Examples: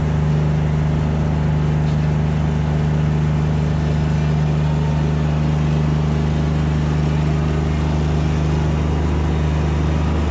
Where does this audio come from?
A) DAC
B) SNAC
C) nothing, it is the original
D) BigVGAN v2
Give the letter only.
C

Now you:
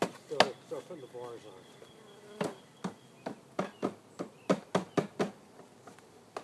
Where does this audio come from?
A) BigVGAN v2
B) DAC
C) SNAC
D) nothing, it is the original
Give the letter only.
D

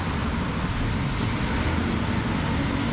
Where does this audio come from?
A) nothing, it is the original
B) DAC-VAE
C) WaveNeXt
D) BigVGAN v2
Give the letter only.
A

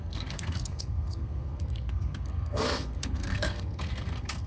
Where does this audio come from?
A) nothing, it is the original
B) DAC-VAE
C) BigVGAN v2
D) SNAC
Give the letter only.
D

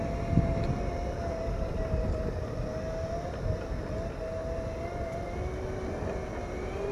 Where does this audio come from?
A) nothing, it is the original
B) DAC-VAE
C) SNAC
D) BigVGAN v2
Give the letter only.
A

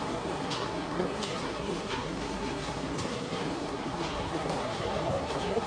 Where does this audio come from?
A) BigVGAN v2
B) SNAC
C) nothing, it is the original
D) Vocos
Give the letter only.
B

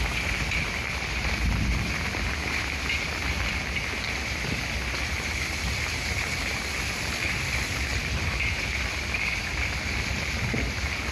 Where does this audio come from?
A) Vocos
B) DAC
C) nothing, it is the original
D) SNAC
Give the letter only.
C